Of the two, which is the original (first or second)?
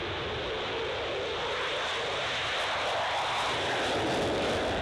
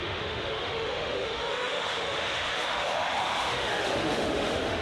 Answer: first